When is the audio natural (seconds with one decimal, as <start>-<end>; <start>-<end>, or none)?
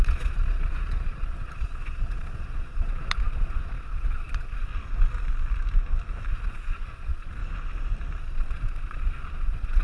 4.7-6.3; 7.4-8.2